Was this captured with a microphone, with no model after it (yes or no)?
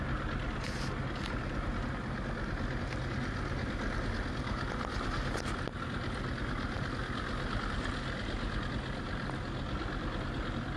yes